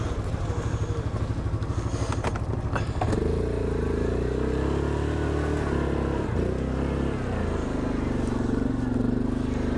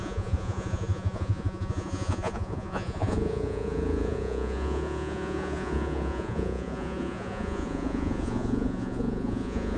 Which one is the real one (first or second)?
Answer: first